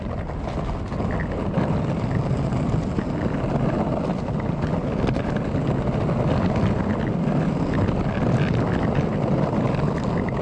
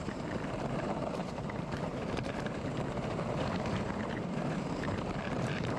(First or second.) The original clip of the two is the first